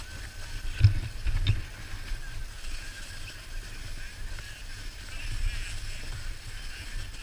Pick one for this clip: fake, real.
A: real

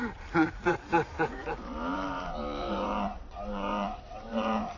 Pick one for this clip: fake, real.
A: fake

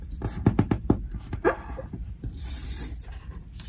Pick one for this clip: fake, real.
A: fake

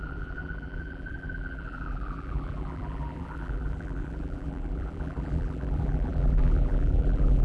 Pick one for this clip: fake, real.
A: fake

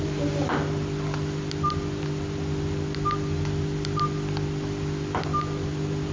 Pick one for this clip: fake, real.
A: fake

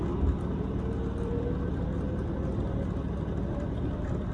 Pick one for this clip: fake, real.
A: fake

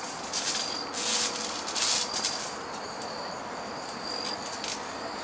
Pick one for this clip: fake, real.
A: real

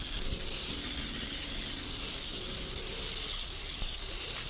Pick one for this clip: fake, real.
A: real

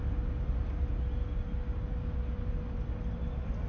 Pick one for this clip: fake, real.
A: real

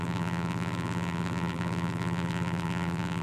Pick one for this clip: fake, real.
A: fake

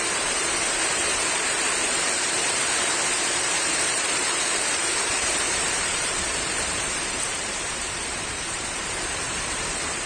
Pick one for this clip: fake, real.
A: fake